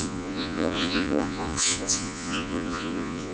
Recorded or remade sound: remade